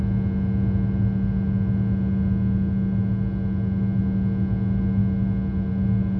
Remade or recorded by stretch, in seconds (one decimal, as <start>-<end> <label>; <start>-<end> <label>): 0.0-6.2 recorded

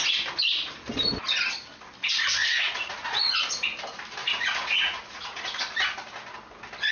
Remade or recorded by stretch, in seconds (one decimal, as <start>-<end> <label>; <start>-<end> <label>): 0.0-2.4 recorded; 2.4-3.4 remade; 3.4-4.2 recorded; 4.2-5.6 remade; 5.6-6.9 recorded